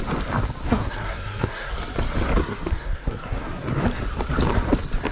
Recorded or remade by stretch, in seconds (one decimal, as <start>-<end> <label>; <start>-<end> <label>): 0.0-0.6 recorded; 0.6-1.7 remade; 1.7-2.4 recorded; 2.4-3.7 remade; 3.7-5.1 recorded